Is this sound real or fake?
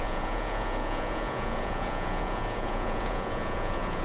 fake